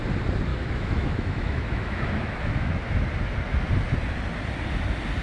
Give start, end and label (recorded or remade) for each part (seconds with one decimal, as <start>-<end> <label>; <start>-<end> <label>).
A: 0.0-0.5 recorded; 0.5-2.8 remade; 2.8-5.2 recorded